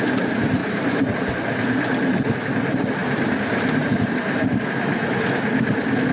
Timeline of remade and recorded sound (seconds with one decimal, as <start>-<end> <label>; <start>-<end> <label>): 0.0-0.6 recorded; 0.6-1.1 remade; 1.1-3.0 recorded; 3.0-4.4 remade; 4.4-6.1 recorded